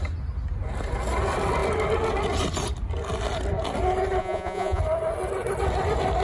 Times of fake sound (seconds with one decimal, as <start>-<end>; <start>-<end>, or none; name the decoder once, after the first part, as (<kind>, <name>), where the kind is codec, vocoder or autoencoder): 4.2-4.8 (vocoder, Vocos)

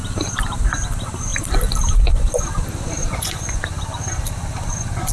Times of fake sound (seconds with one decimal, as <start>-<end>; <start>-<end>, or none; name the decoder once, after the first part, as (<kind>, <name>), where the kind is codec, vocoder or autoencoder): 3.0-3.6 (vocoder, Vocos)

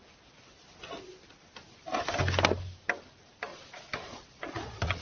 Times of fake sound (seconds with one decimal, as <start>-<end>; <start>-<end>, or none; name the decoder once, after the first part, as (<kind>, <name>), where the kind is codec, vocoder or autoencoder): 3.5-5.0 (vocoder, Vocos)

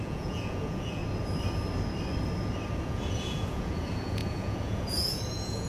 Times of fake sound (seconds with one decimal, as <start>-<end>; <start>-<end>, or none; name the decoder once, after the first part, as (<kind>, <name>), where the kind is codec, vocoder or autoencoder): 0.0-1.0 (vocoder, Vocos); 2.8-5.7